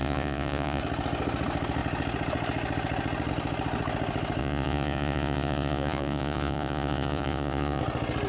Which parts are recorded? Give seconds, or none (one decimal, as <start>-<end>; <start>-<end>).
0.8-4.4; 7.8-8.3